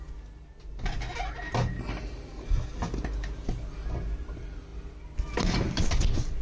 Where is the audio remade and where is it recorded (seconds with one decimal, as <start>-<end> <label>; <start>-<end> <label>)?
0.0-6.4 recorded